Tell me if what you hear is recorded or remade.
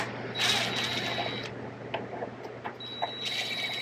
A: recorded